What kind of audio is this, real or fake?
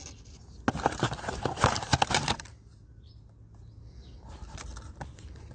real